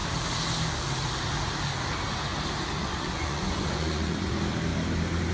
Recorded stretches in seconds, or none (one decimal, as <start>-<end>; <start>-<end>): 0.0-2.8; 4.3-5.3